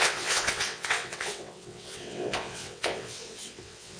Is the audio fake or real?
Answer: fake